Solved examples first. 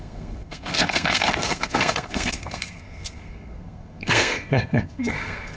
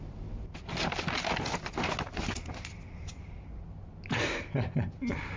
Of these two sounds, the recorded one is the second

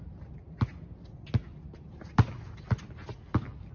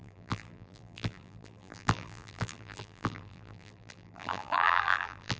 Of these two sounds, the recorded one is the first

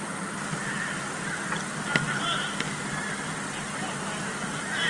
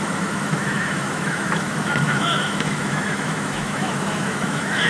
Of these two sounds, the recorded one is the first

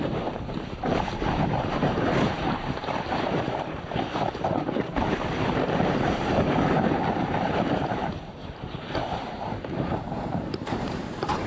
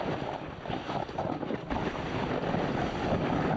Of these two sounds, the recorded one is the second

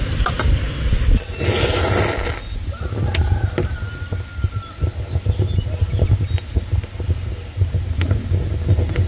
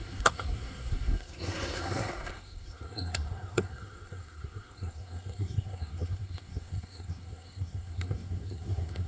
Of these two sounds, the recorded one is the first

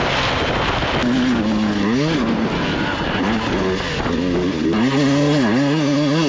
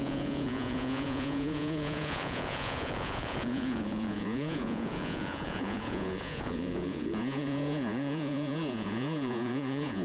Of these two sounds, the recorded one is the first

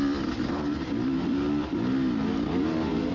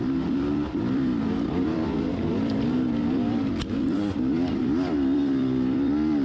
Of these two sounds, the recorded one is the first